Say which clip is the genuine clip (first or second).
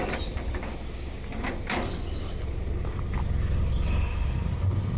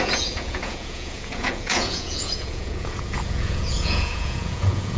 first